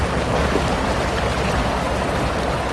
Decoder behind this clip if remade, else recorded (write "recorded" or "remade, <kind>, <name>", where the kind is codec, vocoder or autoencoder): recorded